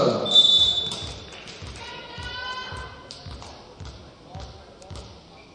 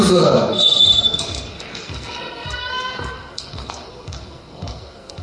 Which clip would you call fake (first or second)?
second